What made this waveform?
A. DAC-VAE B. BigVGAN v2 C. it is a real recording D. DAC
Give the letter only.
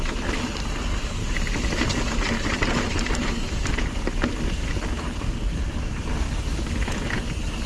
C